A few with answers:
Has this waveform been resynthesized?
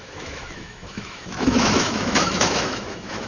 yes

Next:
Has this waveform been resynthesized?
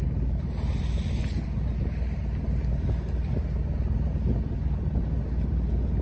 no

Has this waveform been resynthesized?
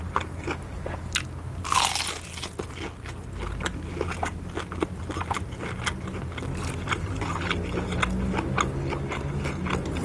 no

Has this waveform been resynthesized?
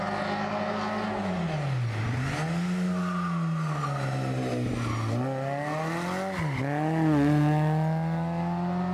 no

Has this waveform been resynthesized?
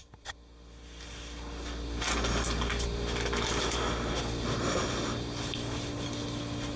no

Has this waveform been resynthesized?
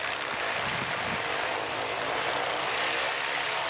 no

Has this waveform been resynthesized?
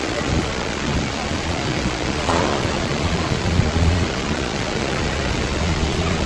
yes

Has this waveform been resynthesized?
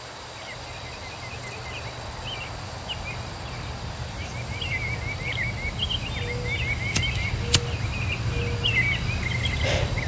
no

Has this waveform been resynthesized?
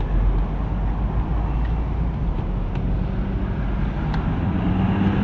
no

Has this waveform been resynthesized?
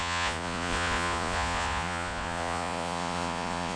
yes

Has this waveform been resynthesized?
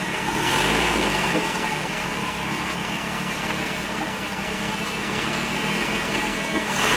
yes